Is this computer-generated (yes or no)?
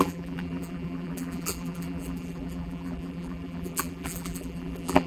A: yes